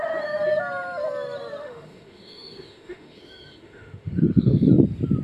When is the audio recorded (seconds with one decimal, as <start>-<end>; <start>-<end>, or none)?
0.0-1.6; 4.7-5.2